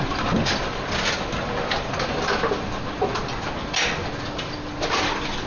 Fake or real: real